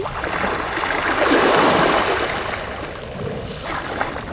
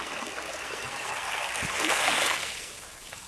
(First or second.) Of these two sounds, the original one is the first